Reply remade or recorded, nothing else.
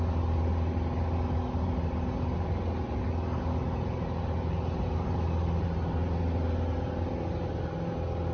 recorded